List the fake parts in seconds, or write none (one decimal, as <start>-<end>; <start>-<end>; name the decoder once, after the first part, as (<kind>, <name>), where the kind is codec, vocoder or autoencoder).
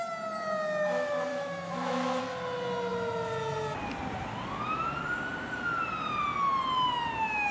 1.3-2.2 (autoencoder, DAC-VAE)